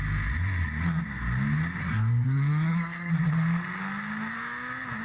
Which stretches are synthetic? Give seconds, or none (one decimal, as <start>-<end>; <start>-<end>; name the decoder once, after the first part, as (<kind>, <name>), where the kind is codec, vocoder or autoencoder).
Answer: 1.8-3.1 (codec, SNAC)